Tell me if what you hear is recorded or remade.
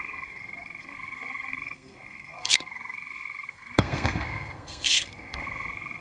remade